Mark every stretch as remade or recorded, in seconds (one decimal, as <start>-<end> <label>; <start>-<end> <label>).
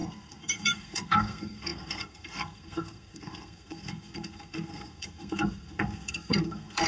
0.0-6.9 remade